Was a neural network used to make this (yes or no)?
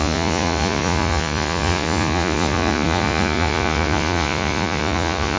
yes